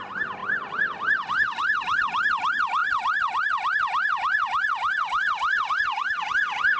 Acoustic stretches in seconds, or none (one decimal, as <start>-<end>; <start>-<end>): 0.0-6.8